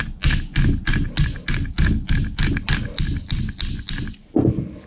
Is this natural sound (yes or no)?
yes